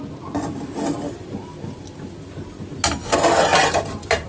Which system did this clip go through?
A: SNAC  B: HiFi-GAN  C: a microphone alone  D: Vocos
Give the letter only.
C